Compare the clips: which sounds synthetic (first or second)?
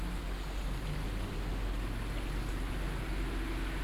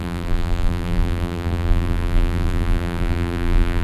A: second